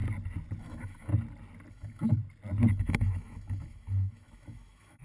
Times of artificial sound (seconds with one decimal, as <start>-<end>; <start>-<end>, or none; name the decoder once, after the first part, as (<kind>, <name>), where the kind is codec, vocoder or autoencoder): 0.6-1.1 (autoencoder, DAC-VAE); 1.7-2.2; 2.7-5.0